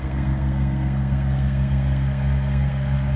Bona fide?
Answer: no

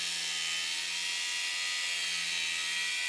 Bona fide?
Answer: yes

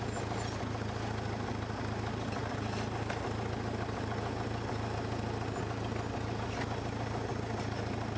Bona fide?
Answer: yes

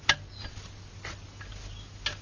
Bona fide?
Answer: yes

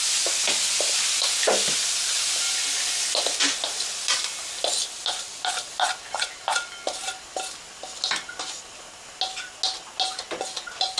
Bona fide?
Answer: yes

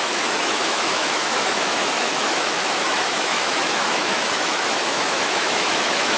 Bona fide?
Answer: no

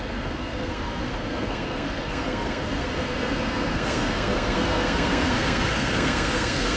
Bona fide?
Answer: no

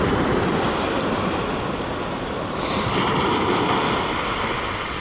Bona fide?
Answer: yes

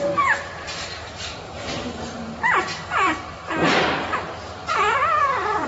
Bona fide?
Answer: no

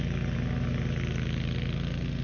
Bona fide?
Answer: yes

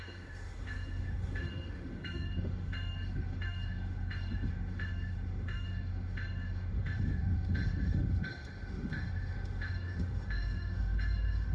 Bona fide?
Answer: no